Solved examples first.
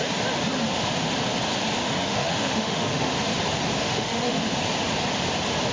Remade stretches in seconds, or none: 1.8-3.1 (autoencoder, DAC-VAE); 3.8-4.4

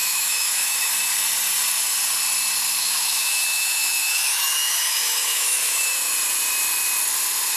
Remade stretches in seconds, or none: 0.0-0.9 (autoencoder, DAC-VAE); 2.8-6.1

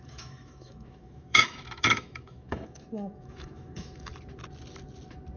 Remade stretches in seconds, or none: 0.0-4.1 (autoencoder, DAC-VAE)